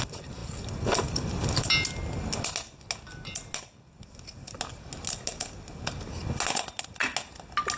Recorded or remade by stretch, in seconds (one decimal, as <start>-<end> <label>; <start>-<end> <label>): 0.0-7.8 recorded